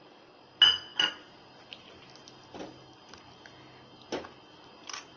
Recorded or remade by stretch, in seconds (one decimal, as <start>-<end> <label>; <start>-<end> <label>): 0.0-5.2 recorded